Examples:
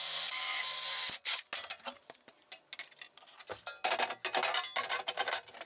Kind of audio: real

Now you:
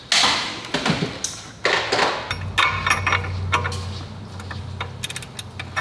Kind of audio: real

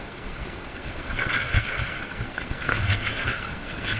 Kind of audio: fake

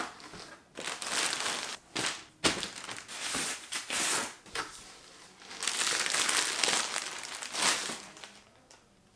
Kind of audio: real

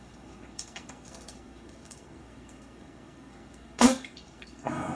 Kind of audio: fake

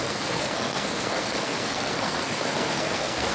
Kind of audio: fake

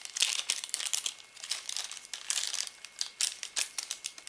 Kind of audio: real